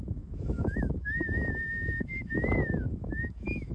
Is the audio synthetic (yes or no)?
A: yes